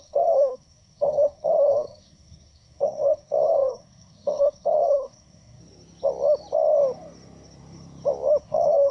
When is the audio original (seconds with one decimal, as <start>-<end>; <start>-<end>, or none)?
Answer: 5.6-8.4